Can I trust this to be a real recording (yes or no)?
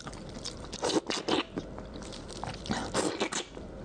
yes